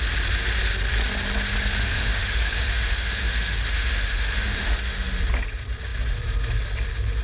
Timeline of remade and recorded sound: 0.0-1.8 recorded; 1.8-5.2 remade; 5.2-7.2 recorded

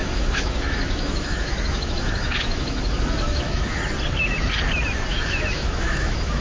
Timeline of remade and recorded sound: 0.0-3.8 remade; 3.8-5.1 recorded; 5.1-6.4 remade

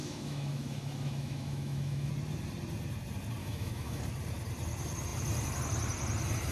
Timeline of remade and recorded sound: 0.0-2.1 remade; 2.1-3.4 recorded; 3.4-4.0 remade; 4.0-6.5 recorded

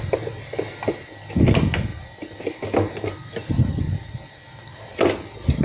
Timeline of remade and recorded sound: 0.0-5.6 recorded

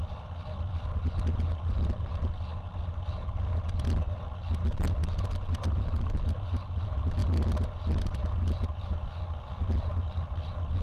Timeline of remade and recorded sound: 0.0-10.8 recorded

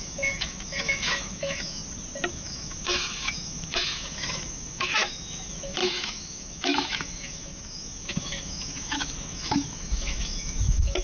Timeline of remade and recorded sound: 0.0-1.8 remade; 1.8-2.3 recorded; 2.3-11.0 remade